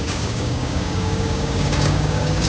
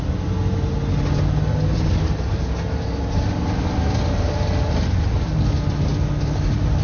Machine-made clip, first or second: first